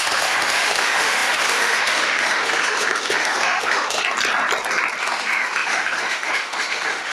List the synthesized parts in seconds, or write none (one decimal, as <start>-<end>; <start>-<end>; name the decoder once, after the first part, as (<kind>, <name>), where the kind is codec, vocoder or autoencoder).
0.0-4.0 (autoencoder, DAC-VAE); 5.0-7.1